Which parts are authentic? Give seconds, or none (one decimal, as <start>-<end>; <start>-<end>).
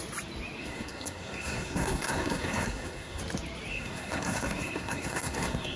0.0-0.6; 3.2-3.7